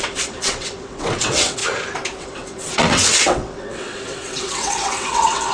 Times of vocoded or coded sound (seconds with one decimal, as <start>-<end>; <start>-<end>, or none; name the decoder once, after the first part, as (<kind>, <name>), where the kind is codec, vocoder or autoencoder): 0.0-1.6 (vocoder, WaveNeXt); 2.2-5.5